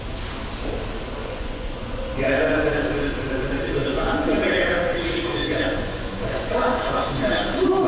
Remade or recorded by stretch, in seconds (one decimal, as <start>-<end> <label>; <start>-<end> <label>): 0.0-1.2 recorded; 1.2-2.7 remade; 2.7-3.8 recorded; 3.8-6.9 remade; 6.9-7.9 recorded